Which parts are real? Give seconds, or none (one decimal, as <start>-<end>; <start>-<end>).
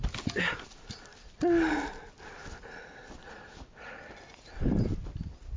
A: 0.0-5.6